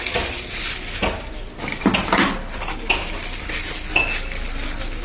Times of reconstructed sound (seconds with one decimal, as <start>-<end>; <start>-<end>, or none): none